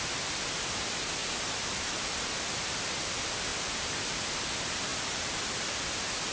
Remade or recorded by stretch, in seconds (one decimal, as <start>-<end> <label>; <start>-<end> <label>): 0.0-3.5 recorded; 3.5-4.2 remade; 4.2-4.9 recorded; 4.9-5.6 remade; 5.6-6.3 recorded

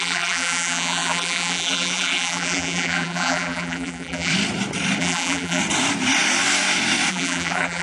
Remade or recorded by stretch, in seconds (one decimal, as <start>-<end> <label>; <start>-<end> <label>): 0.0-4.3 remade; 4.3-5.0 recorded; 5.0-5.6 remade; 5.6-7.1 recorded; 7.1-7.8 remade

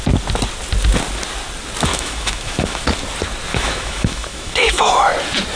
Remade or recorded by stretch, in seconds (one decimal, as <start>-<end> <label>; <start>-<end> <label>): 0.0-1.9 recorded; 1.9-2.8 remade; 2.8-3.5 recorded; 3.5-4.9 remade; 4.9-5.6 recorded

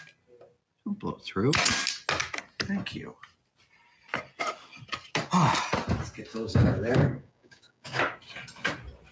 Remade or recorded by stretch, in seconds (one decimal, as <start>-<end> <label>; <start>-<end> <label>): 0.0-6.3 recorded; 6.3-8.0 remade; 8.0-9.1 recorded

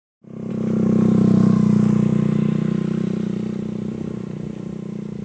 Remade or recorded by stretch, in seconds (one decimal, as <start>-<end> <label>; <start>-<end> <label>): 0.0-5.2 recorded

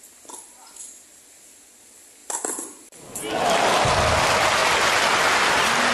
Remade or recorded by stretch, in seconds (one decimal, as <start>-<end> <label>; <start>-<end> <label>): 0.0-5.9 recorded

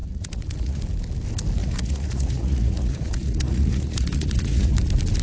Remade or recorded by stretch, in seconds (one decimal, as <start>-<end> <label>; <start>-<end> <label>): 0.0-0.8 remade; 0.8-1.6 recorded; 1.6-4.7 remade; 4.7-5.2 recorded